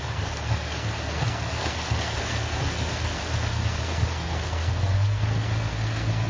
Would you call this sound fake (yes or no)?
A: yes